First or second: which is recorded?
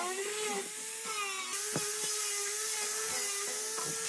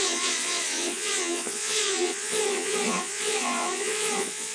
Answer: first